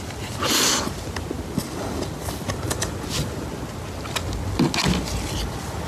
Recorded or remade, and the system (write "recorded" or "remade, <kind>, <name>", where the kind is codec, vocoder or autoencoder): recorded